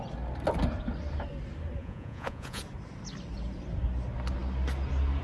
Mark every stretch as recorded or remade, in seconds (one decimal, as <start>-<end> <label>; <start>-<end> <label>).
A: 0.0-1.8 recorded; 1.8-2.6 remade; 2.6-5.2 recorded